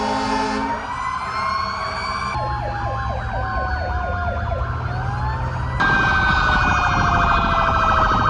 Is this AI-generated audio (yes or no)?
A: no